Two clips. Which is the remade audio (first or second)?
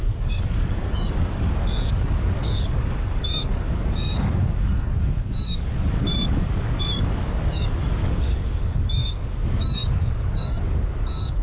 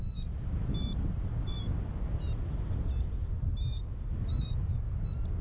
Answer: first